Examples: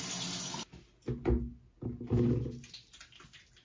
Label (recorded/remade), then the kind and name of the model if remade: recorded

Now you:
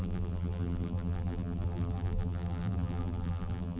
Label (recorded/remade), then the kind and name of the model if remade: remade, vocoder, BigVGAN v2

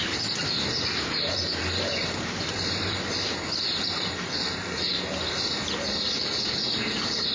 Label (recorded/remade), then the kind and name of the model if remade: remade, vocoder, BigVGAN v2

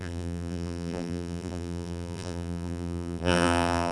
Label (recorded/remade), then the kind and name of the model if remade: remade, vocoder, BigVGAN v2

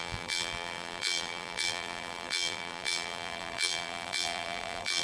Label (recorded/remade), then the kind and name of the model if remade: remade, vocoder, BigVGAN v2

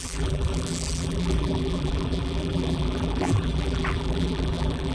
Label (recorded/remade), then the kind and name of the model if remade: remade, vocoder, BigVGAN v2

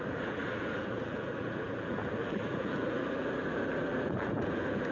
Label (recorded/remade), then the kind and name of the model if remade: remade, vocoder, BigVGAN v2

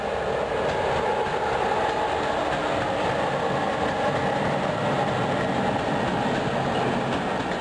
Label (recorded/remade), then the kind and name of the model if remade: recorded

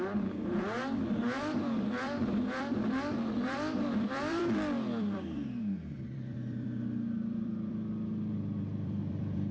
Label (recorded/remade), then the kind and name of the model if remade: remade, vocoder, BigVGAN v2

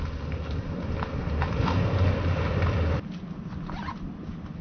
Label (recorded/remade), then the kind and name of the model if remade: recorded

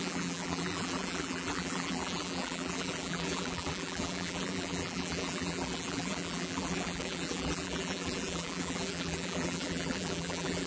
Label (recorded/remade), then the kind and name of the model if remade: remade, vocoder, BigVGAN v2